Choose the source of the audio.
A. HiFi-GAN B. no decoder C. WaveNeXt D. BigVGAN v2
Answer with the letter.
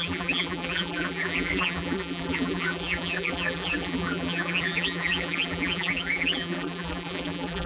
D